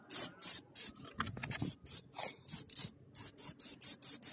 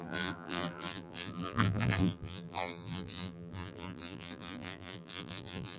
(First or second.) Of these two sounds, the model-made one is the second